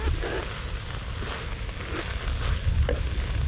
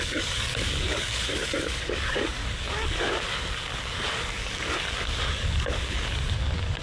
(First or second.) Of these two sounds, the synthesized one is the second